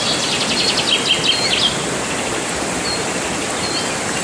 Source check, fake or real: real